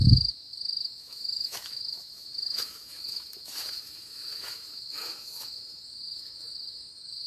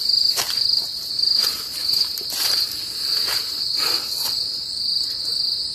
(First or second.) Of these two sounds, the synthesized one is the first